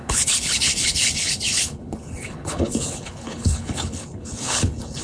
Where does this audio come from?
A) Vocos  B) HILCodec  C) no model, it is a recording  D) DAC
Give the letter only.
B